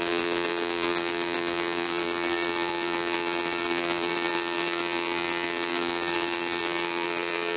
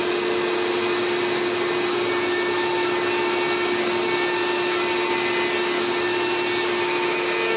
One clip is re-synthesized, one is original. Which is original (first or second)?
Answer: second